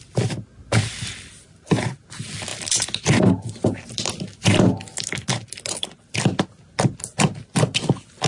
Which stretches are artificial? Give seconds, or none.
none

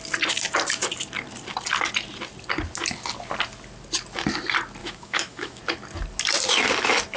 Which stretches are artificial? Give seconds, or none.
4.8-5.6 (autoencoder, DAC-VAE)

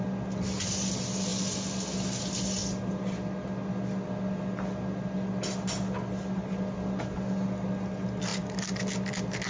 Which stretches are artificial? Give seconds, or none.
none

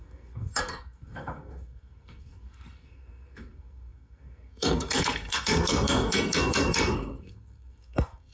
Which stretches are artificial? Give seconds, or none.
0.0-8.3 (codec, SNAC)

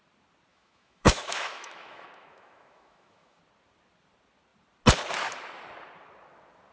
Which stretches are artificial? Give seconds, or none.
0.5-3.4 (autoencoder, DAC-VAE)

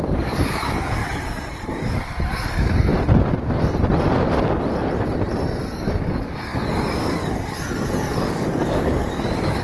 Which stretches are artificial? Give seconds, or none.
0.0-1.0 (codec, DAC); 1.7-2.9; 5.7-9.6